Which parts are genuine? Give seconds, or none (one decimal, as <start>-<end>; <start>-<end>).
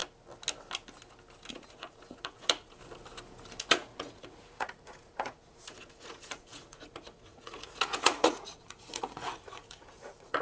0.0-1.5; 2.8-3.6